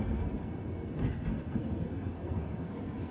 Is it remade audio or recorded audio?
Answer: remade